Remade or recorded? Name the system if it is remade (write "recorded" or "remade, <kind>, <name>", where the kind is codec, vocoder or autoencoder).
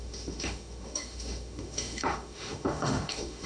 remade, autoencoder, DAC-VAE